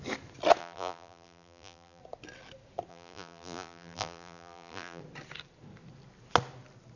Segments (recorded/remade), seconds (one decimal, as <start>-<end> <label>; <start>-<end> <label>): 0.0-0.6 recorded; 0.6-2.0 remade; 2.0-2.9 recorded; 2.9-5.0 remade; 5.0-7.0 recorded